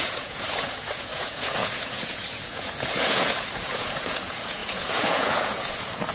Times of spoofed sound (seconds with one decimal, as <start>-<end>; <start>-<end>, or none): 0.0-6.1